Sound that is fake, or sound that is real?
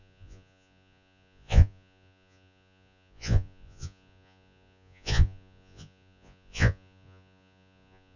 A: fake